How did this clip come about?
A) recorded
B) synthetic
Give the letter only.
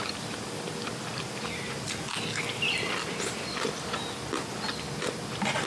A